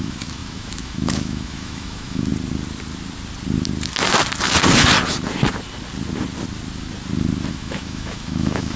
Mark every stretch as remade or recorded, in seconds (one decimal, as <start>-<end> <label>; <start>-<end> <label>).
0.0-2.3 remade; 2.3-7.5 recorded; 7.5-8.8 remade